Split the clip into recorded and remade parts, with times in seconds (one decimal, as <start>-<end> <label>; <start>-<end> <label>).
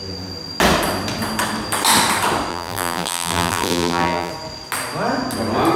0.0-2.5 recorded; 2.5-4.3 remade; 4.3-5.8 recorded